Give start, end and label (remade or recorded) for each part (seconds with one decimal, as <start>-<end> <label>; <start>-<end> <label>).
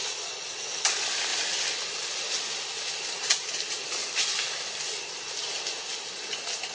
0.0-6.7 recorded